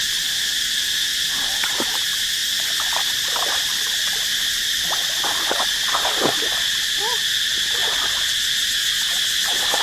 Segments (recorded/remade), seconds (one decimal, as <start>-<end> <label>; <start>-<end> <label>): 0.0-2.4 recorded; 2.4-4.5 remade; 4.5-9.8 recorded